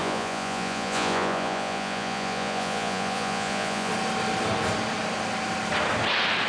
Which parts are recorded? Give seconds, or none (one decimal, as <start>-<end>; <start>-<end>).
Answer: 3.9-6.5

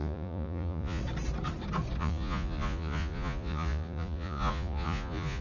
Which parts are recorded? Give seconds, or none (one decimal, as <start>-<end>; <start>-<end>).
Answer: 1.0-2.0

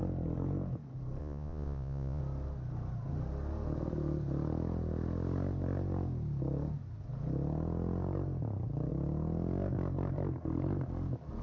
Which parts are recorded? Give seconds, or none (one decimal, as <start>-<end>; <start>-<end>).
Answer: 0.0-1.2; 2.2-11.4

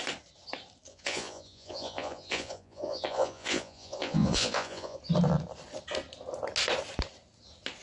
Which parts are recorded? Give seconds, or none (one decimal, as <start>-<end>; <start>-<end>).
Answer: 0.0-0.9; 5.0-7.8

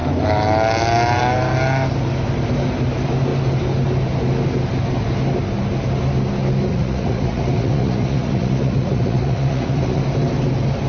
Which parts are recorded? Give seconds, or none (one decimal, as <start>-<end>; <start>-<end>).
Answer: 0.0-6.7; 10.0-10.9

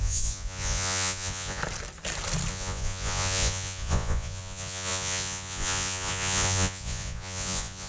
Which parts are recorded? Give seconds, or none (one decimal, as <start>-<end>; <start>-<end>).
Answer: 1.6-2.5